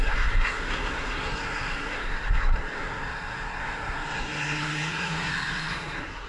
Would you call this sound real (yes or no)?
no